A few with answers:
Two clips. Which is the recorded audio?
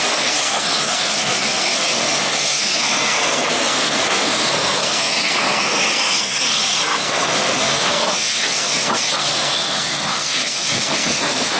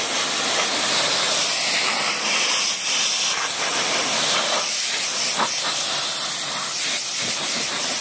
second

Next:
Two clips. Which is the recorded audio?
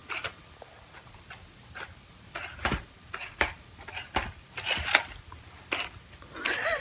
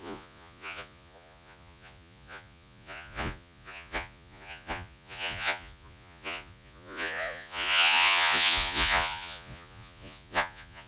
first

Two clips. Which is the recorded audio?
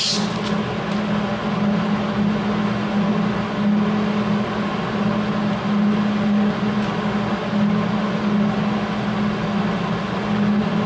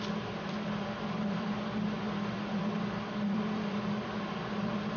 first